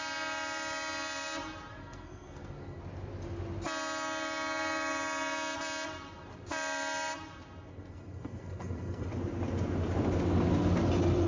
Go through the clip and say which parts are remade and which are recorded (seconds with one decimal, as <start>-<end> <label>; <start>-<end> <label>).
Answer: 0.0-1.7 recorded; 1.7-2.8 remade; 2.8-7.7 recorded; 7.7-9.1 remade; 9.1-11.3 recorded